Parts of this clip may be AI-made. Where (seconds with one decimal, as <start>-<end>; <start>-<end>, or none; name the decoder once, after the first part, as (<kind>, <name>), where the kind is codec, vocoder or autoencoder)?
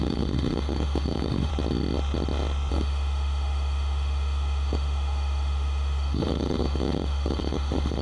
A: 0.0-1.5 (autoencoder, DAC-VAE); 2.7-8.0